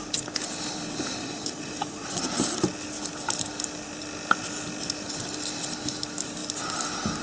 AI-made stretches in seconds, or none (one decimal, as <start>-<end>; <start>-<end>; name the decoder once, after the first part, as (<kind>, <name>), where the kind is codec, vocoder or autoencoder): 1.2-2.2 (vocoder, Vocos)